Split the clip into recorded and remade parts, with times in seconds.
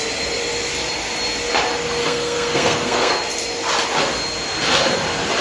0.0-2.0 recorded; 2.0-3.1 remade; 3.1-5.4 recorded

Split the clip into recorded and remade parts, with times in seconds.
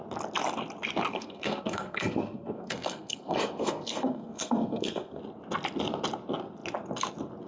0.0-1.1 recorded; 1.1-5.2 remade; 5.2-7.5 recorded